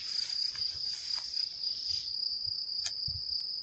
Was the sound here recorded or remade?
recorded